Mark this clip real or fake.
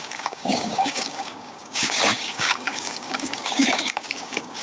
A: fake